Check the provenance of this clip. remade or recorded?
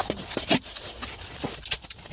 remade